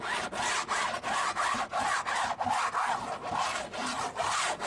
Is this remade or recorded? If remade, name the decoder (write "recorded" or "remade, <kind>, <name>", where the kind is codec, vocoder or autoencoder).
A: recorded